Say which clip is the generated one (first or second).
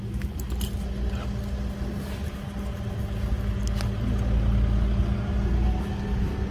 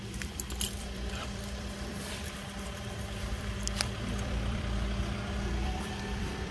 second